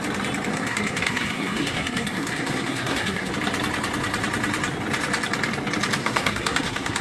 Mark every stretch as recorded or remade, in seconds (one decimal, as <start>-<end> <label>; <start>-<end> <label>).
0.0-0.5 recorded; 0.5-3.3 remade; 3.3-6.0 recorded; 6.0-7.0 remade